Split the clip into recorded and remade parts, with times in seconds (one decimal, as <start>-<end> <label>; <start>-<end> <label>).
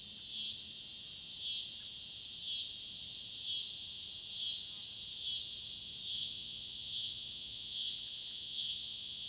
0.0-6.1 recorded; 6.1-9.3 remade